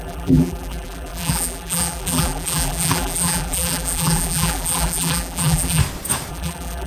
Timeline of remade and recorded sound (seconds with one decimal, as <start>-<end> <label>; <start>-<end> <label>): 0.0-5.8 remade; 5.8-6.3 recorded; 6.3-6.9 remade